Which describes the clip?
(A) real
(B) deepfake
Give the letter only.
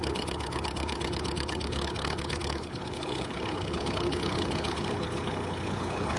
B